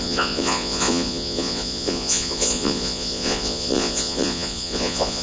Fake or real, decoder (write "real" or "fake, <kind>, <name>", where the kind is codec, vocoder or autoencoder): fake, vocoder, Vocos